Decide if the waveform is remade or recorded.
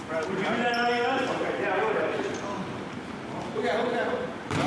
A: remade